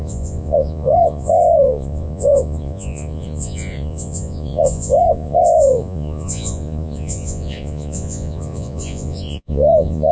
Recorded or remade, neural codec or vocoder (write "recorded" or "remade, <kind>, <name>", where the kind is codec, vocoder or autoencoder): remade, vocoder, Vocos